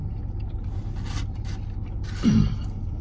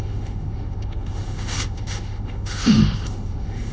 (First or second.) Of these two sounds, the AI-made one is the second